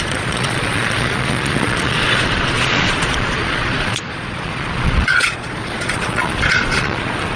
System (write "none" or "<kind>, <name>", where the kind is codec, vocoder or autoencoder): vocoder, Vocos